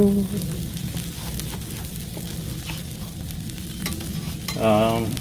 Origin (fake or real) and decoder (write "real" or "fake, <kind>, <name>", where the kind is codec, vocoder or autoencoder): real